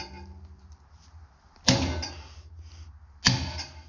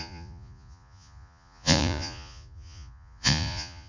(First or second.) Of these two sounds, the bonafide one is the first